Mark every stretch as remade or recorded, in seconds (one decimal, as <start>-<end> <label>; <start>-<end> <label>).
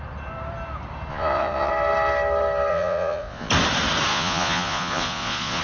0.0-1.1 recorded; 1.1-1.7 remade; 1.7-2.7 recorded; 2.7-3.5 remade; 3.5-4.1 recorded; 4.1-5.6 remade